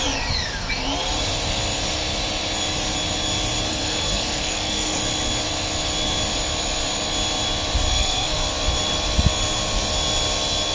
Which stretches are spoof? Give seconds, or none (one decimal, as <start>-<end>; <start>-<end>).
3.7-5.0; 7.9-8.4